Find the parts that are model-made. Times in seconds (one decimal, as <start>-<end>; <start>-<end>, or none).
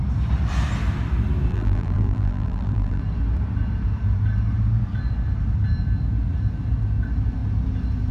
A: 1.5-3.0